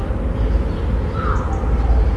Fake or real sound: real